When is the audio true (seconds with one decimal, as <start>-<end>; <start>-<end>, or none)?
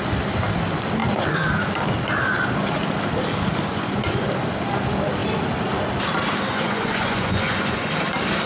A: 0.0-3.7; 4.3-6.5; 7.9-8.5